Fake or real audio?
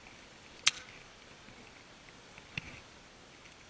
real